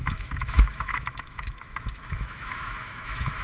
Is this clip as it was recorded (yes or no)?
no